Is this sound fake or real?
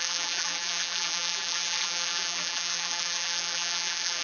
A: fake